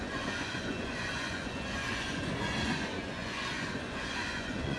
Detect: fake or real fake